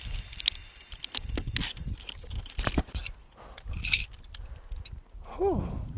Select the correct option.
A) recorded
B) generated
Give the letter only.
A